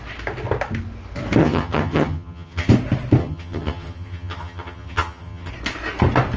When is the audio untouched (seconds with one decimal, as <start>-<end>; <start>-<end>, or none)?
0.0-1.4; 2.7-3.2; 5.5-6.4